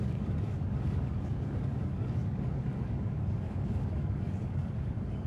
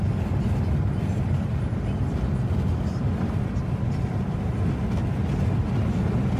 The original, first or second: second